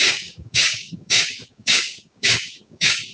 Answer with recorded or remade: remade